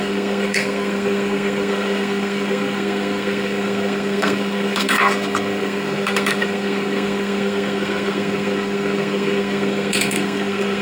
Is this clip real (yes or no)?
no